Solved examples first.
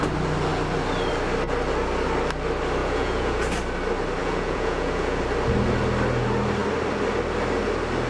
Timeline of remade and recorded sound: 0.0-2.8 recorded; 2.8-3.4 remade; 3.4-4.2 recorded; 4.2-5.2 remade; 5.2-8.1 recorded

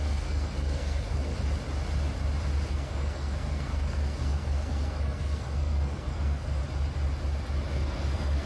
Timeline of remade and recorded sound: 0.0-1.3 remade; 1.3-2.7 recorded; 2.7-6.6 remade; 6.6-7.7 recorded; 7.7-8.5 remade

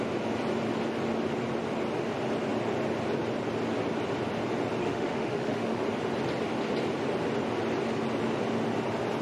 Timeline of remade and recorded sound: 0.0-4.8 recorded; 4.8-5.8 remade; 5.8-9.2 recorded

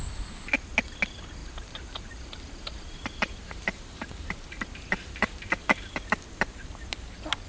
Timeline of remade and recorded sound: 0.0-1.4 recorded; 1.4-5.9 remade; 5.9-7.5 recorded

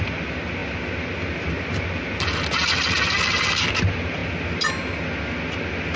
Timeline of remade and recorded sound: 0.0-6.0 recorded

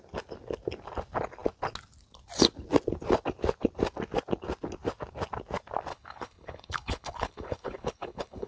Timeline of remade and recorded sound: 0.0-5.9 recorded; 5.9-8.5 remade

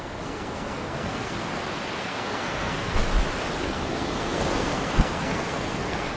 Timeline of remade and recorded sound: 0.0-1.5 remade; 1.5-2.0 recorded; 2.0-3.0 remade; 3.0-3.6 recorded; 3.6-6.2 remade

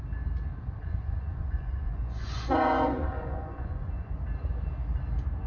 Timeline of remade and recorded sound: 0.0-0.8 recorded; 0.8-4.1 remade; 4.1-5.5 recorded